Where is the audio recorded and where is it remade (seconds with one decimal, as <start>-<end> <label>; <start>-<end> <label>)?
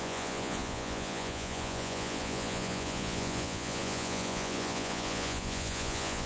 0.0-6.3 remade